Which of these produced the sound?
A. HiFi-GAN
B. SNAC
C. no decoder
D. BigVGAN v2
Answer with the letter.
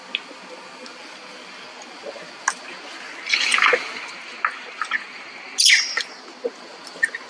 C